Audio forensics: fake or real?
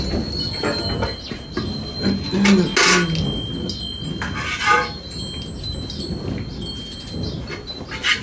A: real